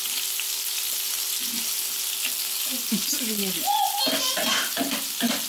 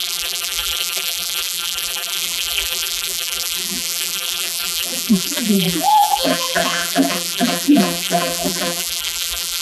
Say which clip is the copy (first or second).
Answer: second